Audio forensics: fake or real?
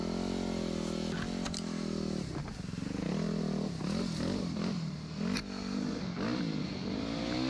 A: real